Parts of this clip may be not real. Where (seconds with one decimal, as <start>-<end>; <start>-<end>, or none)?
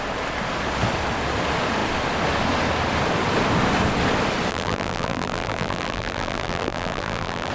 4.5-7.5